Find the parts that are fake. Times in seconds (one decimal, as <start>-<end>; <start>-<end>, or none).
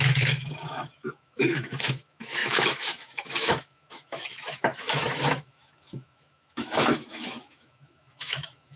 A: 0.0-8.8